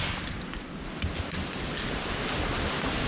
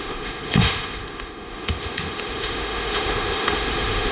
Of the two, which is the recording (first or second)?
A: first